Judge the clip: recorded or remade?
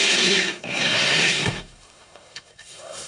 remade